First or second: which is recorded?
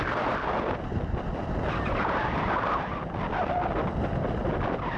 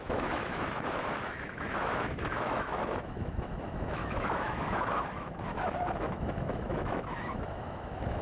first